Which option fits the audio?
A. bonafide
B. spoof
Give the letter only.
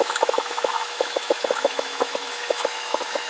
B